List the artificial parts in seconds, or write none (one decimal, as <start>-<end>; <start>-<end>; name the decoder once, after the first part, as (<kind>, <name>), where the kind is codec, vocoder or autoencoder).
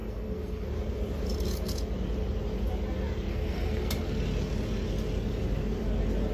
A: 0.0-0.7 (codec, SNAC); 3.3-3.9